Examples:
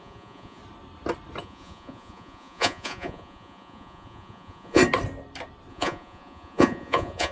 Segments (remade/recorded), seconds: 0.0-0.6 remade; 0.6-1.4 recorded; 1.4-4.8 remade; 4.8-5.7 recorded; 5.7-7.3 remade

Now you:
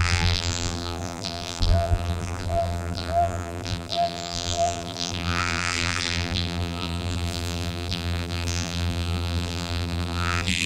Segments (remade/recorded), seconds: 0.0-10.7 remade

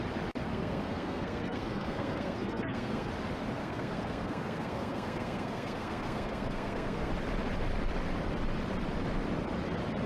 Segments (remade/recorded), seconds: 0.0-0.5 recorded; 0.5-3.1 remade; 3.1-3.6 recorded; 3.6-7.1 remade; 7.1-10.1 recorded

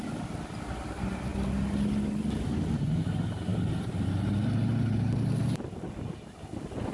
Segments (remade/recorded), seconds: 0.0-6.9 recorded

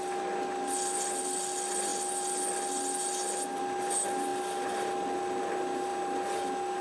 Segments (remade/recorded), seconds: 0.0-6.8 recorded

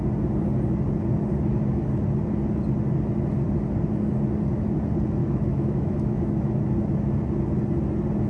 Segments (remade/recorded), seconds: 0.0-5.2 recorded; 5.2-6.5 remade; 6.5-8.3 recorded

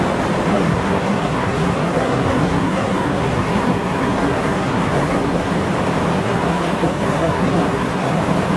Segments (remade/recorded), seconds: 0.0-0.5 recorded; 0.5-5.5 remade; 5.5-6.2 recorded; 6.2-8.2 remade; 8.2-8.6 recorded

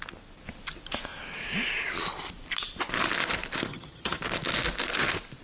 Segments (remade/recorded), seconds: 0.0-3.7 recorded; 3.7-4.2 remade; 4.2-5.4 recorded